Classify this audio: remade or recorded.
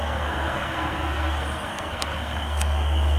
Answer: remade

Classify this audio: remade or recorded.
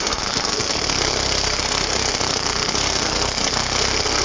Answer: remade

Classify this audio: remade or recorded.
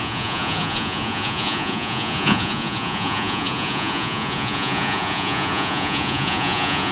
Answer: remade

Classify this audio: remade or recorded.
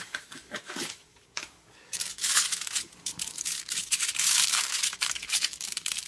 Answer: remade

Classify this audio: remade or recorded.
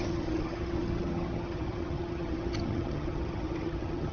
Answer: remade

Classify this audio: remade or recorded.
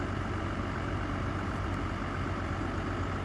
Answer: recorded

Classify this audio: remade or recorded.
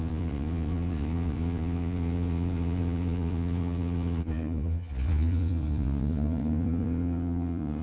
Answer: remade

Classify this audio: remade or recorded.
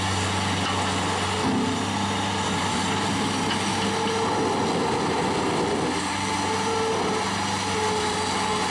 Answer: recorded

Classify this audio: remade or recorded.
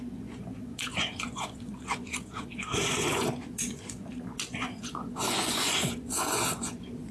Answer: remade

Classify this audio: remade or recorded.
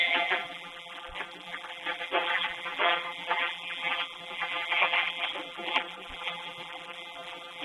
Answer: remade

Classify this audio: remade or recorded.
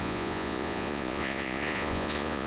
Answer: remade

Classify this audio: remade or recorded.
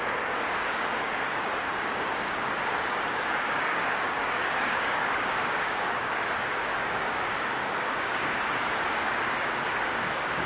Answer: remade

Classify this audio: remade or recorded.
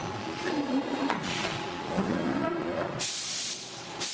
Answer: remade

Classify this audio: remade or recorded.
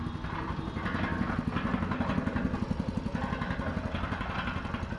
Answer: recorded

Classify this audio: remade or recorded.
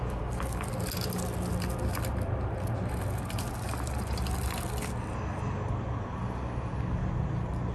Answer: recorded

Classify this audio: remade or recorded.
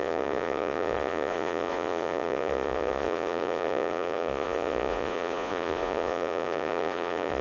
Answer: remade